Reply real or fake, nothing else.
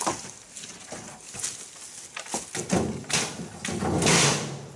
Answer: real